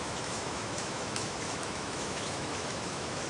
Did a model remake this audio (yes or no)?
yes